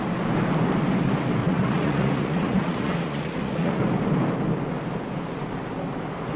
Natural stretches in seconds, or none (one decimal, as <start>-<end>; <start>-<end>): 0.0-1.4; 3.8-6.4